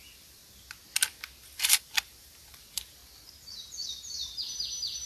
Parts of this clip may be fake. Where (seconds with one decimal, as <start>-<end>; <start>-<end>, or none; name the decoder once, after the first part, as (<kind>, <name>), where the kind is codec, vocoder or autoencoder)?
0.0-0.4 (vocoder, BigVGAN v2); 1.8-3.0